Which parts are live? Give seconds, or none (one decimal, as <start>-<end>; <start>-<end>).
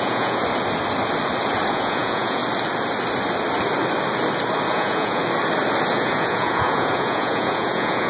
0.4-1.7; 2.4-4.7; 5.2-5.9